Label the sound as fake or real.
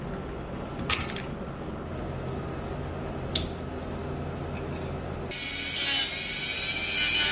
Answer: real